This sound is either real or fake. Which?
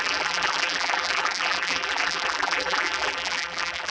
fake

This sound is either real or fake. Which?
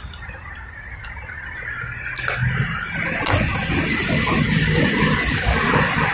real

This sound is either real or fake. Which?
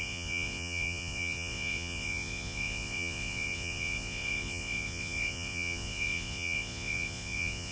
fake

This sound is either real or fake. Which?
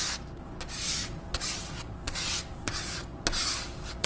real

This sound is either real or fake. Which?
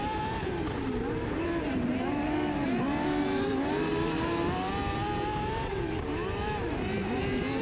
fake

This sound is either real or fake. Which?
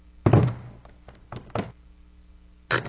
real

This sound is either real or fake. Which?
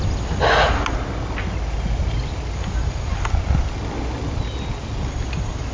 real